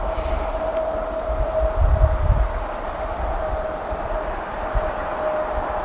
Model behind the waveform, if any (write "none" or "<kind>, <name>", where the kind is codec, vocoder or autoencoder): none